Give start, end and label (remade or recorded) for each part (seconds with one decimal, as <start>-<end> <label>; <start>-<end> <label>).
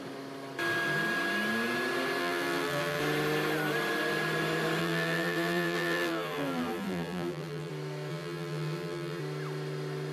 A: 0.0-2.2 recorded; 2.2-3.0 remade; 3.0-4.8 recorded; 4.8-7.7 remade; 7.7-8.1 recorded; 8.1-9.2 remade; 9.2-10.1 recorded